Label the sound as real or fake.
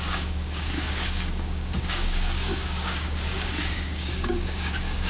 fake